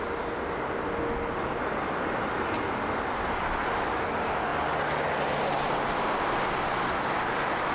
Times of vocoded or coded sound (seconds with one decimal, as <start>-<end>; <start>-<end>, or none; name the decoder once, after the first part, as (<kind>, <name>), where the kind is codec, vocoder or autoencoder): none